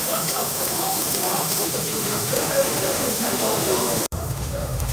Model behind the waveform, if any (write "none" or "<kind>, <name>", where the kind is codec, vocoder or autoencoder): autoencoder, DAC-VAE